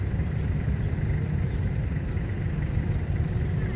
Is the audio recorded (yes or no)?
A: yes